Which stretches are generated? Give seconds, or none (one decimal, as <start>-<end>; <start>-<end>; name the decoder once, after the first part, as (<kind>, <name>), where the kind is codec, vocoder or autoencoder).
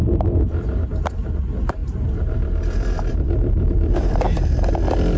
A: 1.8-4.7 (vocoder, BigVGAN v2)